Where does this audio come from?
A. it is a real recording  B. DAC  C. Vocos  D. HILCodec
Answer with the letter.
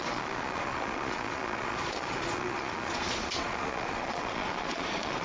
C